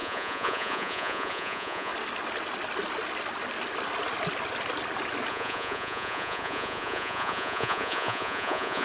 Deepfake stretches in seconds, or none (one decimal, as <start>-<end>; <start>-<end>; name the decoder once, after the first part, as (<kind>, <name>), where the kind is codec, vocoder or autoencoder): 0.0-1.9 (vocoder, Vocos); 5.3-8.8